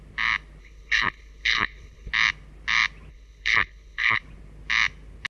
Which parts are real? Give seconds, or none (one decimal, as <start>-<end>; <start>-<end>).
0.0-0.6; 2.1-3.1; 4.2-5.3